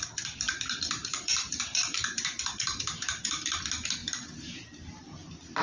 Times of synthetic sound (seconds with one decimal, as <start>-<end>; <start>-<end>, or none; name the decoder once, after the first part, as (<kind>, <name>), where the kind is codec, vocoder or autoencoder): 1.0-3.6 (vocoder, BigVGAN v2); 4.0-4.9